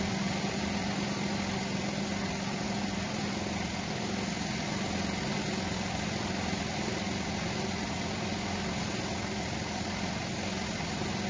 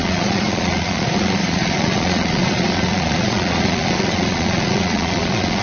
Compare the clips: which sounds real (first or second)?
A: first